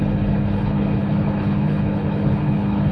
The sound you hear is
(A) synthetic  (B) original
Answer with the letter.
A